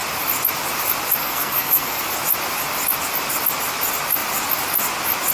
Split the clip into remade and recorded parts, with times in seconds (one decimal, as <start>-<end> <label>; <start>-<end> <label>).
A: 0.0-1.2 recorded; 1.2-2.0 remade; 2.0-5.3 recorded

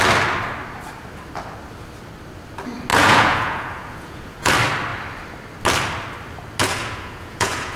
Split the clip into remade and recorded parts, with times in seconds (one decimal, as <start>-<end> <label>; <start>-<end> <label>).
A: 0.0-2.9 recorded; 2.9-4.5 remade; 4.5-6.6 recorded; 6.6-7.8 remade

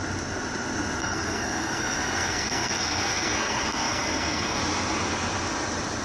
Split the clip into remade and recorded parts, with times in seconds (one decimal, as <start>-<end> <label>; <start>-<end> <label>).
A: 0.0-1.0 recorded; 1.0-4.6 remade; 4.6-6.0 recorded

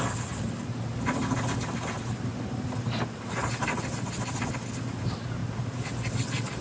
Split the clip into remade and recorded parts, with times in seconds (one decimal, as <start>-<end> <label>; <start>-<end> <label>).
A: 0.0-6.6 recorded

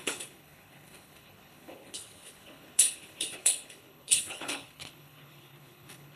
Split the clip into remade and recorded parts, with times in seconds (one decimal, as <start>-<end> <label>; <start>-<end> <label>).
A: 0.0-6.2 remade